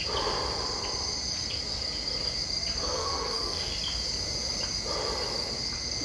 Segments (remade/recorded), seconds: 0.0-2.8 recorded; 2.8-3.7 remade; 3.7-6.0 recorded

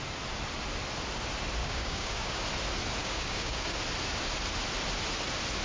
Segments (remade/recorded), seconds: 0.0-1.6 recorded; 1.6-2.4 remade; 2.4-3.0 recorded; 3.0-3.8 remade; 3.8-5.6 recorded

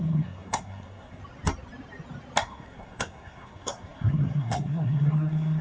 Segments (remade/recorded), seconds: 0.0-1.2 remade; 1.2-2.4 recorded; 2.4-5.6 remade